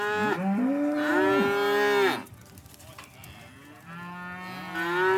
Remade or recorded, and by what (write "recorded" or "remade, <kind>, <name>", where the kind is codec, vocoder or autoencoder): recorded